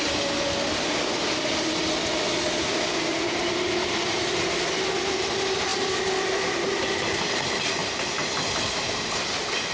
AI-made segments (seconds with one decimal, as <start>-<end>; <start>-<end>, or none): none

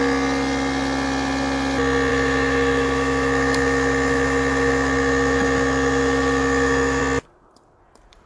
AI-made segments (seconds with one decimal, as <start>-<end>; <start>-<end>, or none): 2.1-7.0